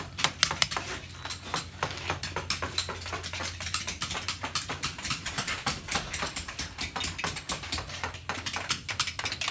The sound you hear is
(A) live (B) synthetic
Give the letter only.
A